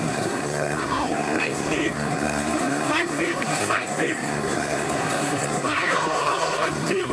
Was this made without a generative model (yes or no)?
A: no